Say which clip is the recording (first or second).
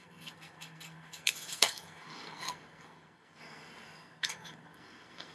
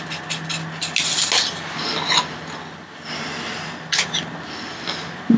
second